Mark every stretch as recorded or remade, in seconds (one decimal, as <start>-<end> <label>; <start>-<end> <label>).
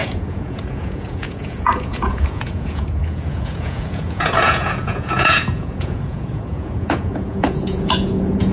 0.0-8.5 remade